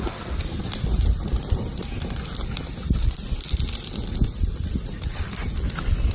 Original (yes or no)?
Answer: yes